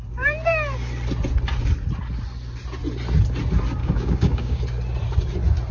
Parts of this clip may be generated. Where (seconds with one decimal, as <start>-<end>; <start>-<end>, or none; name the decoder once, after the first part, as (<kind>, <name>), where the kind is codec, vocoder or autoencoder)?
3.8-4.6 (codec, DAC)